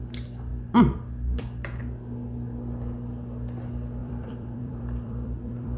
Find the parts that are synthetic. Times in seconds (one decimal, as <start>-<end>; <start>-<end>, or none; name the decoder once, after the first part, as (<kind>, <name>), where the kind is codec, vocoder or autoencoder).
0.5-1.8 (vocoder, BigVGAN v2); 4.0-5.8